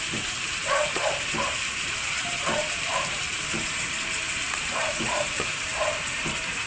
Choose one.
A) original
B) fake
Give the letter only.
B